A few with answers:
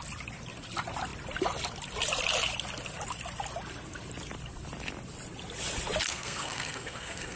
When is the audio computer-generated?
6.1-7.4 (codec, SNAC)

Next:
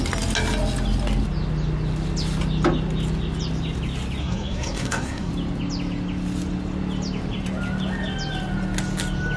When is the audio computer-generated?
4.2-5.3 (codec, SNAC)

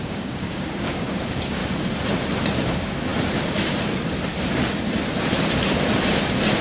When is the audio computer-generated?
0.0-1.6 (codec, DAC); 2.7-3.1

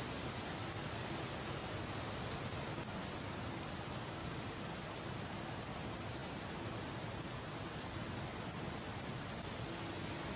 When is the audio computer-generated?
none